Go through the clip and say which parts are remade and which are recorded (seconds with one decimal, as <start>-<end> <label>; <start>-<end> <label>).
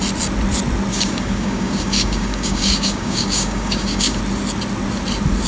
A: 0.0-0.9 recorded; 0.9-4.2 remade; 4.2-5.5 recorded